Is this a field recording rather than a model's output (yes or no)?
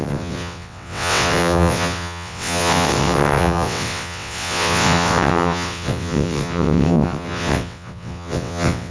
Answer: no